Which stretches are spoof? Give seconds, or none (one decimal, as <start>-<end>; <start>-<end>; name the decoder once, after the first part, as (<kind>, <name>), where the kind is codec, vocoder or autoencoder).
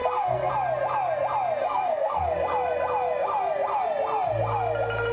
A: 0.0-0.5 (codec, SNAC); 1.6-2.2